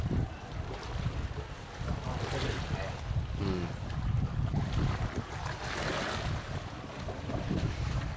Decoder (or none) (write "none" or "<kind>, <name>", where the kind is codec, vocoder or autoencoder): none